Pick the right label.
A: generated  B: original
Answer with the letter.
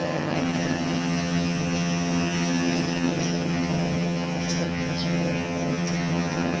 A